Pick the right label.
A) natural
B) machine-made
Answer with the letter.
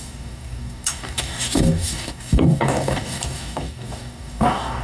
B